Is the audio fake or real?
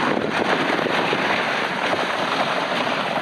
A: real